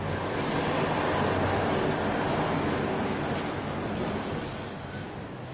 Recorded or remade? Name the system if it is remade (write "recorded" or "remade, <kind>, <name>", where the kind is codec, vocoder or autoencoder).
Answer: recorded